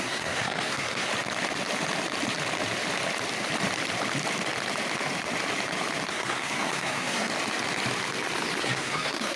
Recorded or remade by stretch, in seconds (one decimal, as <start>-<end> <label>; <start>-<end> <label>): 0.0-1.1 remade; 1.1-6.1 recorded; 6.1-7.3 remade; 7.3-8.6 recorded; 8.6-9.4 remade